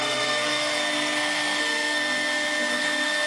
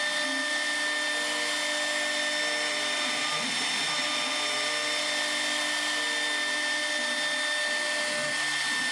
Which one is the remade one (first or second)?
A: first